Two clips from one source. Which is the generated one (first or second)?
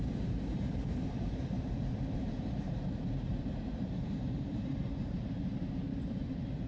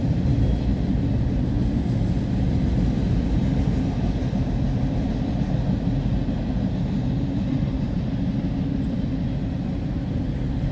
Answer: first